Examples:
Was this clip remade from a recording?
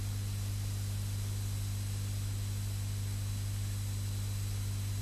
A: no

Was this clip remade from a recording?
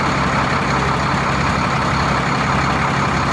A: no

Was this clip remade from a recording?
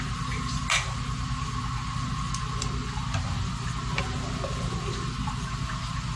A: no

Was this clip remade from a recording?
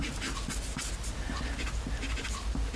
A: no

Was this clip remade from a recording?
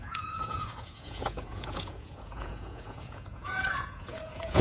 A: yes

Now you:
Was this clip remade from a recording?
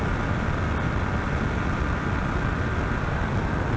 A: no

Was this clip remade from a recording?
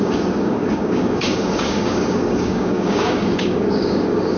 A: yes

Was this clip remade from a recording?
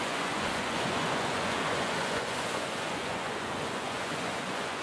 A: yes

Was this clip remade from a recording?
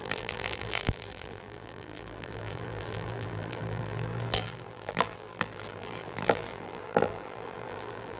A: yes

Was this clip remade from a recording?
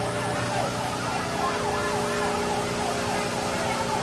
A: no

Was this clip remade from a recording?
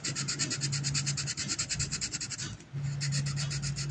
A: no